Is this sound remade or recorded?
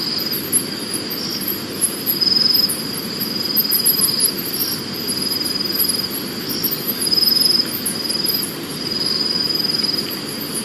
recorded